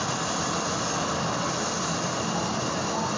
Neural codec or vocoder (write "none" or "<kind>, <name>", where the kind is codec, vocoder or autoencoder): none